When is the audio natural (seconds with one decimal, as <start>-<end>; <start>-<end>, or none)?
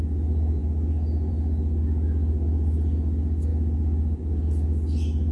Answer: 0.0-5.3